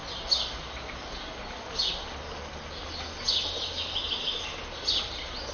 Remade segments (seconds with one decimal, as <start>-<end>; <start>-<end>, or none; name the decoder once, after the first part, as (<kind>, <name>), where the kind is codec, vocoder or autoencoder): none

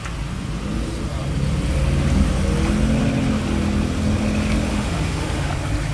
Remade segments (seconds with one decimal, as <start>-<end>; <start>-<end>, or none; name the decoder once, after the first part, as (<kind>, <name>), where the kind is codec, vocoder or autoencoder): 4.7-5.5 (autoencoder, DAC-VAE)

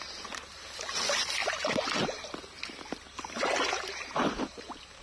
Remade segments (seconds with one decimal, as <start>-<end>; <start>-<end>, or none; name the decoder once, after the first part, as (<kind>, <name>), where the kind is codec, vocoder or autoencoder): none

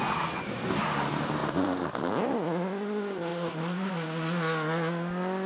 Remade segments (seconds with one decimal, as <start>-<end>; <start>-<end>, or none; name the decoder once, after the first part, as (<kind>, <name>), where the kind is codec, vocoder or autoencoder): 1.4-1.9 (vocoder, BigVGAN v2); 3.3-3.9